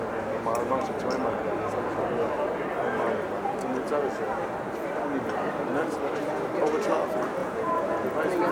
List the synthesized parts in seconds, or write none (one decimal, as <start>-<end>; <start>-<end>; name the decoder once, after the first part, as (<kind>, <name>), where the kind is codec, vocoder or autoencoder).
7.4-8.0 (vocoder, Vocos)